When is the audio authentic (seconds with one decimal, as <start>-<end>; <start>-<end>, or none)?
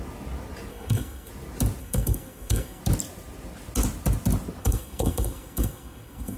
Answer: 0.0-0.7; 1.3-1.8; 2.8-4.6